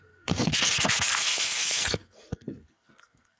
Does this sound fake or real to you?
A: fake